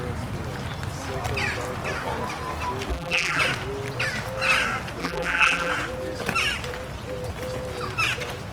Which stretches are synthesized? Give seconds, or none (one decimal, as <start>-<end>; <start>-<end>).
2.9-3.4; 5.0-5.7